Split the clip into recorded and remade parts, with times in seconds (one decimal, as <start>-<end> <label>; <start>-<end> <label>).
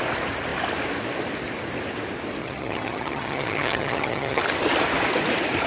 0.0-2.4 recorded; 2.4-4.4 remade; 4.4-5.7 recorded